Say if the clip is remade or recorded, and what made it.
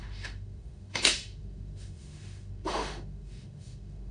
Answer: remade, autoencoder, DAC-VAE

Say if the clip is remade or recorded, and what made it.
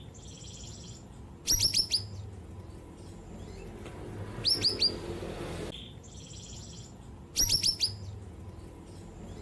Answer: recorded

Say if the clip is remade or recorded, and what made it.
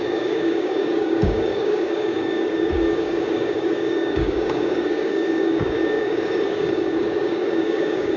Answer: remade, codec, DAC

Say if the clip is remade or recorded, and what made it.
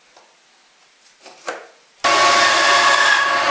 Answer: recorded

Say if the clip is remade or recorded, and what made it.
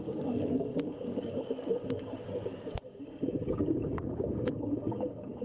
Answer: remade, codec, DAC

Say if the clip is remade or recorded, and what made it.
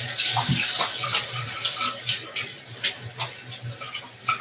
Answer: recorded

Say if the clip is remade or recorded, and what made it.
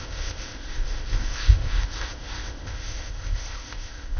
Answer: remade, codec, ZipCodec